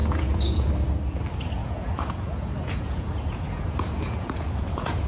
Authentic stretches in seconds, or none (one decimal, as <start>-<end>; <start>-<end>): 0.7-1.6